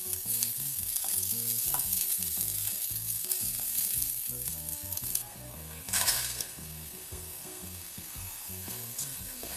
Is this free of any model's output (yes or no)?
no